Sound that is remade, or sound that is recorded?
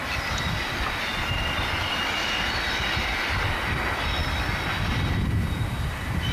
recorded